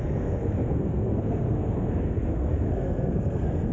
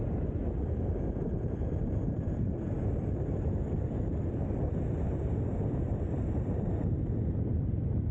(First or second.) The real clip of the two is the second